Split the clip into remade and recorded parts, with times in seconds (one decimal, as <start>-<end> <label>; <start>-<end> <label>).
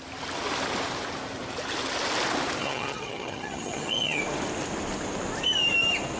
0.0-2.6 recorded; 2.6-4.2 remade; 4.2-6.2 recorded